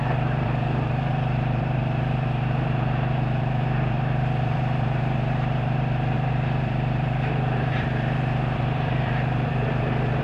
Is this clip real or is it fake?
fake